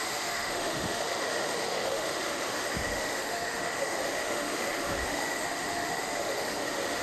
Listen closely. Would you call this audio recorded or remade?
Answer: remade